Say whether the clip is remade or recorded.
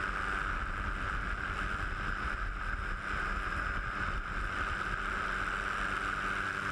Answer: recorded